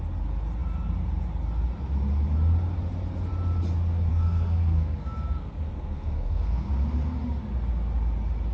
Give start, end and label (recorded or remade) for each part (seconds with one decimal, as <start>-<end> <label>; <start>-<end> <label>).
0.0-4.1 recorded; 4.1-6.7 remade; 6.7-8.5 recorded